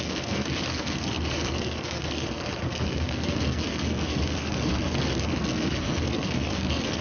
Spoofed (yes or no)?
yes